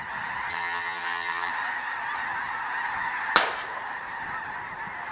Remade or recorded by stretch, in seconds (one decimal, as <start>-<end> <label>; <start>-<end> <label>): 0.0-0.5 recorded; 0.5-1.5 remade; 1.5-5.1 recorded